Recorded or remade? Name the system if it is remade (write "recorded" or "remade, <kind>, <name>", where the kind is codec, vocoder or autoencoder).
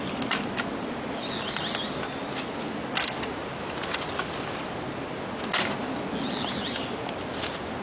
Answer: recorded